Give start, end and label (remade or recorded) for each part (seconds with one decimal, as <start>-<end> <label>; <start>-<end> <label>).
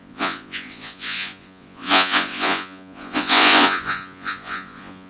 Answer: 0.0-5.1 remade